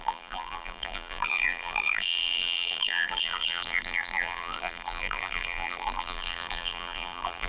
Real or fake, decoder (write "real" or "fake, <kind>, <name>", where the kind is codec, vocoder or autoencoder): fake, vocoder, BigVGAN v2